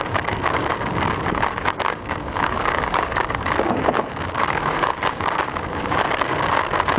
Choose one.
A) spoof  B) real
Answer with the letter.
A